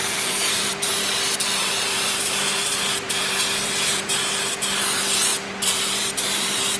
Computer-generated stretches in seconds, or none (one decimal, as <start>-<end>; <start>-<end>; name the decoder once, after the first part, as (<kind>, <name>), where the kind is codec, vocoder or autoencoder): 0.0-1.1 (vocoder, BigVGAN v2); 1.6-4.1; 5.3-6.8